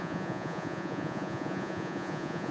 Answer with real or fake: fake